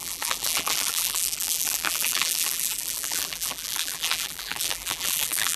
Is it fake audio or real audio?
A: fake